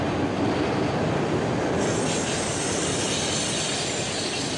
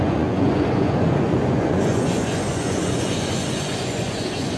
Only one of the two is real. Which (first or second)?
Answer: first